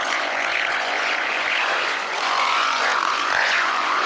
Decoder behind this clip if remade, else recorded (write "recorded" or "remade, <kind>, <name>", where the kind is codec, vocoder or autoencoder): remade, vocoder, Vocos